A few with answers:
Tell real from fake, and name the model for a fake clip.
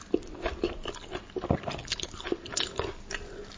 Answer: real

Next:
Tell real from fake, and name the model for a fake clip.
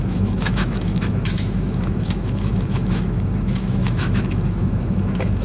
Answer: fake, autoencoder, DAC-VAE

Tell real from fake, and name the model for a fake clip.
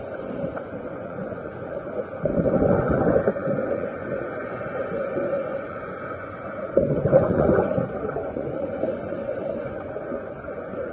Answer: fake, vocoder, Vocos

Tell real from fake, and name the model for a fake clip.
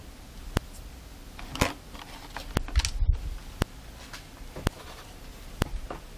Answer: real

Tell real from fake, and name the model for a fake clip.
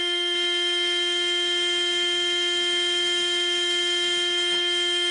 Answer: fake, autoencoder, DAC-VAE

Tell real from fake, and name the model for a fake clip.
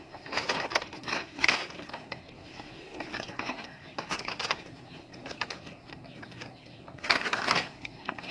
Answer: fake, codec, SNAC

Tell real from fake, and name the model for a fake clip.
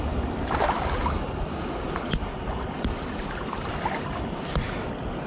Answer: real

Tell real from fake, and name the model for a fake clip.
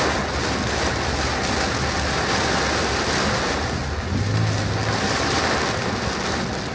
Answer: real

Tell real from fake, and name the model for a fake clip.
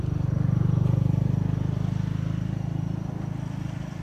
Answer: real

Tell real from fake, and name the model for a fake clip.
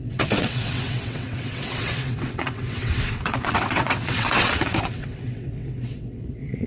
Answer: fake, vocoder, WaveNeXt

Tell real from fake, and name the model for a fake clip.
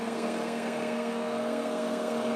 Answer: fake, codec, SNAC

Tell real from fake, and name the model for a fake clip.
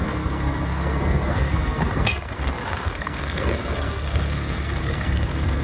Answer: fake, codec, SNAC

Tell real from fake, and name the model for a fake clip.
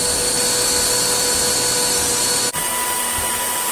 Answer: real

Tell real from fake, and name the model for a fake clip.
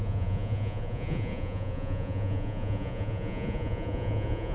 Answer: fake, vocoder, Vocos